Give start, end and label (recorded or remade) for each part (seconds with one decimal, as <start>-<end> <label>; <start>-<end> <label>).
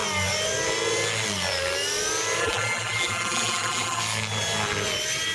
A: 0.0-2.4 recorded; 2.4-4.0 remade; 4.0-5.3 recorded